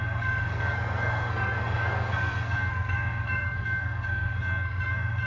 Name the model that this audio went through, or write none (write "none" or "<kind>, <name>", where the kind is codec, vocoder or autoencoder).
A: codec, SNAC